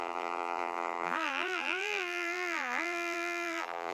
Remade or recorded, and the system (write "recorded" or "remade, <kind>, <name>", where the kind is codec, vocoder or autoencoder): remade, vocoder, BigVGAN v2